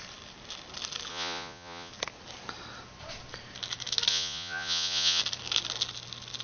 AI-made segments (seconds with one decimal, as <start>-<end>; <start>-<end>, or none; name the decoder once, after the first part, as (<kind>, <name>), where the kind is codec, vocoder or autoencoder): 1.1-1.9 (vocoder, Vocos); 4.1-5.2